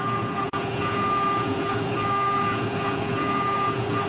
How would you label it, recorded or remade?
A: remade